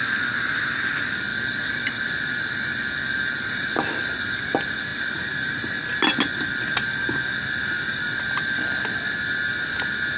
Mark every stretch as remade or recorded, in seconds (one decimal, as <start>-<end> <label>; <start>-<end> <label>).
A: 0.0-10.2 recorded